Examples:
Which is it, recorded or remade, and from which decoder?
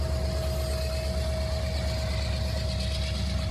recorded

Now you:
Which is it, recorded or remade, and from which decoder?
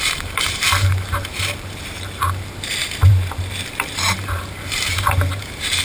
remade, vocoder, BigVGAN v2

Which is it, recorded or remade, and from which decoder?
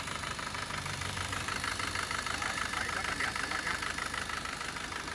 remade, vocoder, BigVGAN v2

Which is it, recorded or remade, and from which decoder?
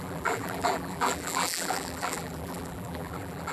remade, vocoder, BigVGAN v2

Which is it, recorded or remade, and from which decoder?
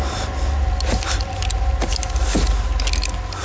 recorded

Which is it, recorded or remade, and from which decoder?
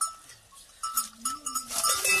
recorded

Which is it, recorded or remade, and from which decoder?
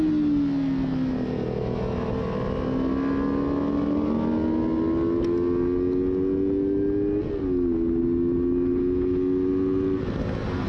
recorded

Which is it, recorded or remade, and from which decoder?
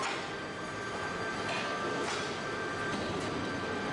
recorded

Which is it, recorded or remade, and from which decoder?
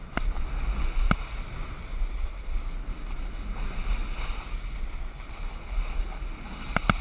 recorded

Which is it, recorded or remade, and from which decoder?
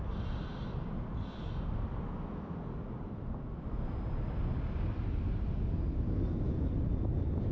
recorded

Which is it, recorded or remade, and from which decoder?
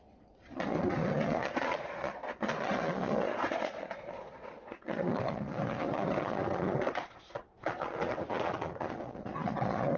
remade, vocoder, Vocos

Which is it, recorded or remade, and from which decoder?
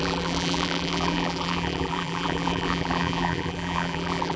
remade, vocoder, BigVGAN v2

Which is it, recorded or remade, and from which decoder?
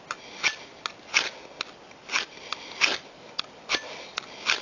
recorded